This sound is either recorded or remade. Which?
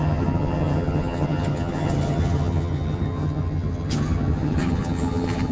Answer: remade